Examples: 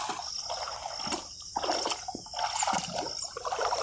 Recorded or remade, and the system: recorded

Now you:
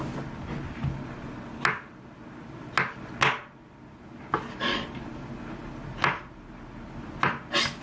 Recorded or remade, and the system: recorded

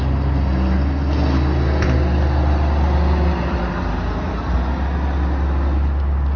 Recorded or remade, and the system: recorded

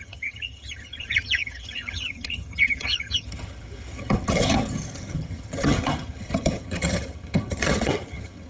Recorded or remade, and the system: remade, vocoder, HiFi-GAN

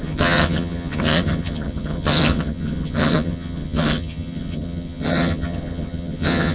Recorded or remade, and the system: remade, vocoder, HiFi-GAN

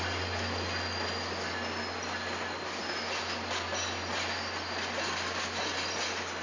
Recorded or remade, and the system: recorded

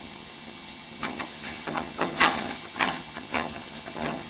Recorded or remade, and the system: remade, vocoder, HiFi-GAN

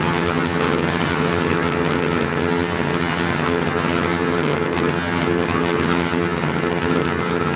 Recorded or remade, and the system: remade, vocoder, HiFi-GAN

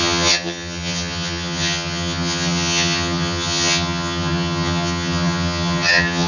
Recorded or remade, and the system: remade, vocoder, HiFi-GAN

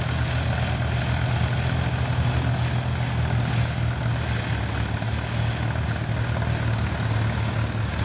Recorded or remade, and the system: recorded